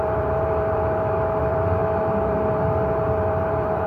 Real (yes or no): no